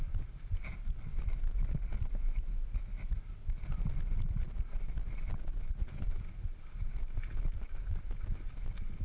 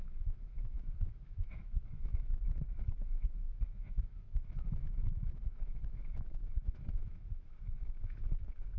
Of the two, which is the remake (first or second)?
second